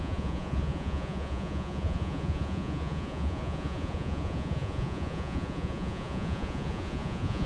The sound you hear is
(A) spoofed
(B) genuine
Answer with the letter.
A